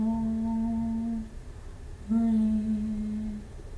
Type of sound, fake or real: real